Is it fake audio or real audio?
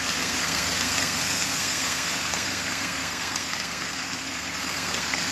fake